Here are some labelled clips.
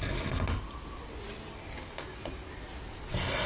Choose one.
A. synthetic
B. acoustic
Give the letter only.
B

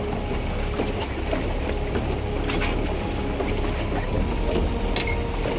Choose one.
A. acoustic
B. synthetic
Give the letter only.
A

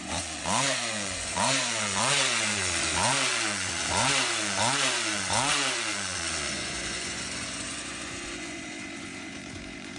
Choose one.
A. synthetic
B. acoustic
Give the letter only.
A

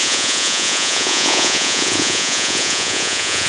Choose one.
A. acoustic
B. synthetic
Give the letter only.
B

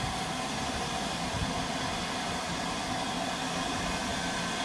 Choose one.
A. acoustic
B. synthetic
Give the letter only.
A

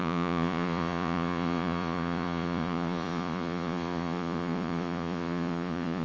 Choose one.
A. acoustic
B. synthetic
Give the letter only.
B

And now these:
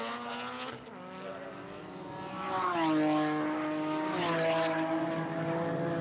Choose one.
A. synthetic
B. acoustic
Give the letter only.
B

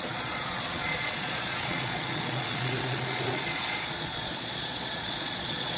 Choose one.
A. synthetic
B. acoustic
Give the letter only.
A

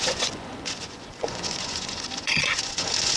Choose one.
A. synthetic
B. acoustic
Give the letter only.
A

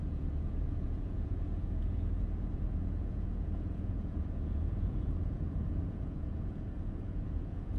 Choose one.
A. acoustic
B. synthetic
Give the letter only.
B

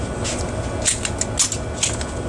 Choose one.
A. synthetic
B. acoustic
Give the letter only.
B